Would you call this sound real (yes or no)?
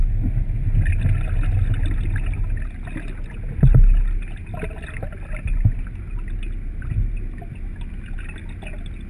yes